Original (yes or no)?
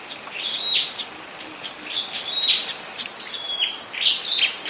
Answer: yes